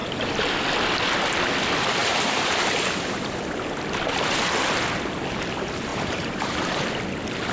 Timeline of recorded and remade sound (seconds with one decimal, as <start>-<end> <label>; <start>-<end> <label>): 0.0-2.0 recorded; 2.0-2.7 remade; 2.7-5.9 recorded; 5.9-6.9 remade; 6.9-7.5 recorded